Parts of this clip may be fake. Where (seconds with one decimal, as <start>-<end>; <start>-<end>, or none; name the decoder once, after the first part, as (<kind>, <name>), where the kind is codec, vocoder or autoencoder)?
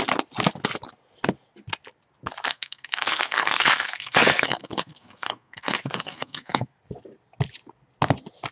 2.5-6.8 (codec, SNAC)